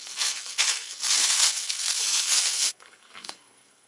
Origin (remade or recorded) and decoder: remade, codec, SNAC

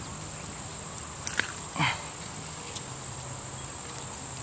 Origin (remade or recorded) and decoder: recorded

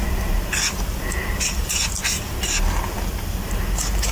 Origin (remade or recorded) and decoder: recorded